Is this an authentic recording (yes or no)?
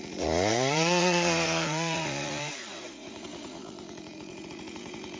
no